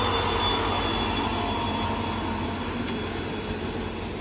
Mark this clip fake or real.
real